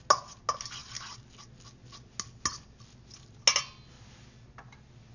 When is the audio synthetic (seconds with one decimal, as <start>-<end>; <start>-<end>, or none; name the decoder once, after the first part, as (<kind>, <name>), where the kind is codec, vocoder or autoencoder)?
none